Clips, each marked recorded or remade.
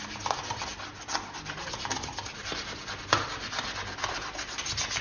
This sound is recorded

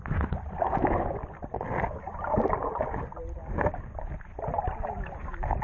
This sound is recorded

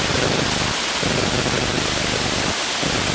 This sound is recorded